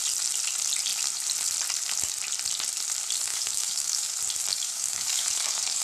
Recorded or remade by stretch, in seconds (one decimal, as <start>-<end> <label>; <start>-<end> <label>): 0.0-3.3 recorded; 3.3-4.1 remade; 4.1-4.5 recorded; 4.5-5.8 remade